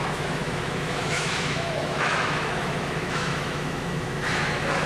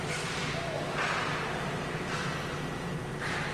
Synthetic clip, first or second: first